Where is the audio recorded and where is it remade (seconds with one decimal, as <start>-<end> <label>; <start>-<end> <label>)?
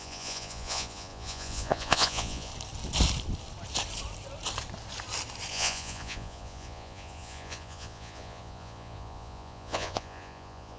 0.0-2.5 remade; 2.5-5.5 recorded; 5.5-10.8 remade